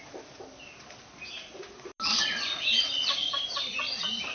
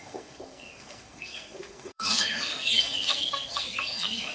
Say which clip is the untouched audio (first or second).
first